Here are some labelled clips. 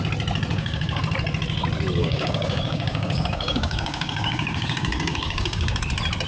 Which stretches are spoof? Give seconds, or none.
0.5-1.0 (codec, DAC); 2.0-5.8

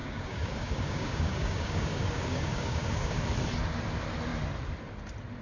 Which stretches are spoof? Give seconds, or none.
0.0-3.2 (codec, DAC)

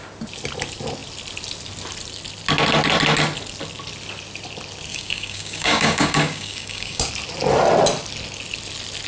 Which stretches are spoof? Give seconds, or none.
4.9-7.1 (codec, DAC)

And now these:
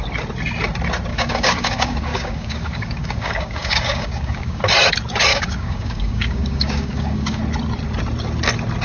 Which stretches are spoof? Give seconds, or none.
1.1-4.6 (codec, DAC); 5.3-7.4

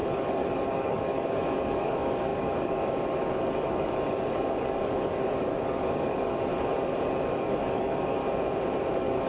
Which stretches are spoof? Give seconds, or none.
0.0-6.5 (codec, DAC); 7.3-8.2; 8.9-9.3

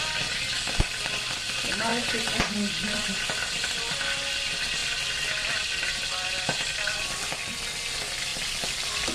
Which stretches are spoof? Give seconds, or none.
none

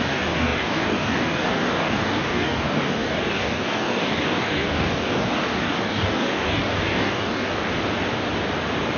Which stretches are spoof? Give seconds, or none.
0.0-7.7 (codec, DAC)